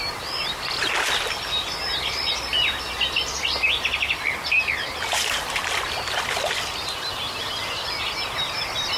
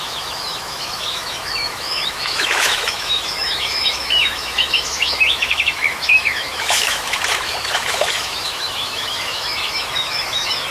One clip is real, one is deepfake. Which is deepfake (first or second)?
second